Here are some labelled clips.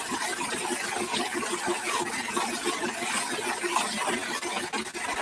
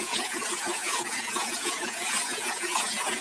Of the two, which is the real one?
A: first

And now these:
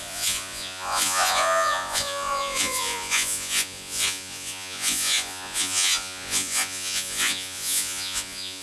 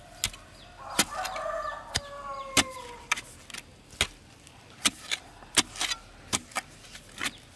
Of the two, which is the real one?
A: second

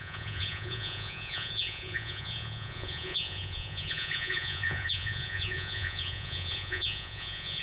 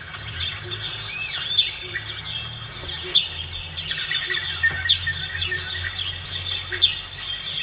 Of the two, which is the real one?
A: second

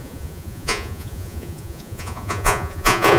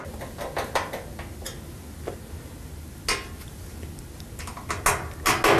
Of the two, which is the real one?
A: second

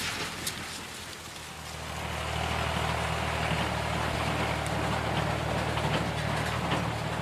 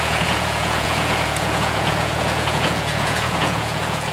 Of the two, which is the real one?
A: first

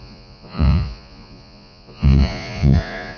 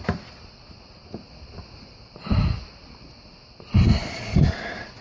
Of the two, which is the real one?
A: second